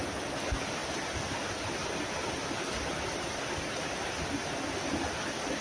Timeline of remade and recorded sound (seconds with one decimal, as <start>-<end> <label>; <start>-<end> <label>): 0.0-5.6 recorded